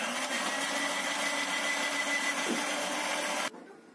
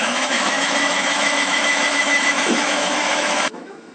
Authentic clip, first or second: first